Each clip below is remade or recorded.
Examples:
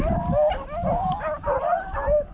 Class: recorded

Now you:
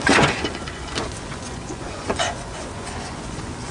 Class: remade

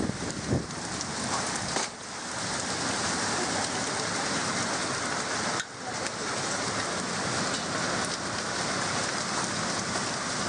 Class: recorded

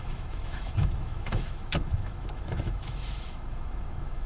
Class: remade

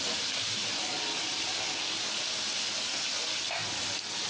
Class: recorded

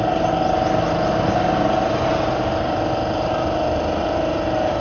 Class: remade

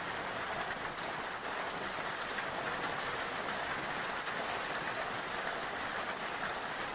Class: recorded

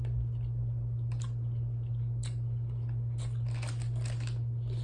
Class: recorded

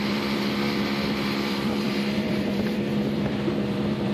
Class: remade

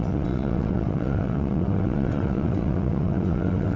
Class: remade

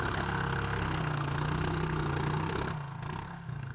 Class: remade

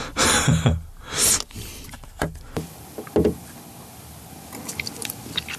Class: recorded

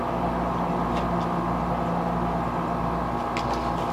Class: recorded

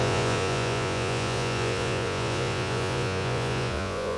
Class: remade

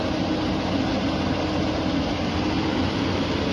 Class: recorded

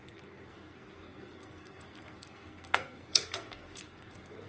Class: remade